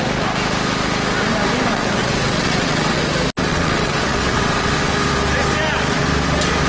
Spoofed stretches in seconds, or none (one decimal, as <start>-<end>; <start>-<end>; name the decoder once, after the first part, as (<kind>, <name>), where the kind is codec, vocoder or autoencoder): 1.7-3.0 (vocoder, WaveNeXt); 3.5-4.9